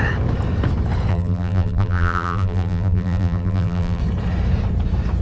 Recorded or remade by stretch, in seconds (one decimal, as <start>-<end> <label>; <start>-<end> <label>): 0.0-1.1 recorded; 1.1-4.0 remade; 4.0-5.2 recorded